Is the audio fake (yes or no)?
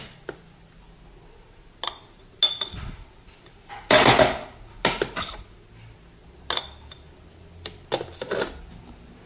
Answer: no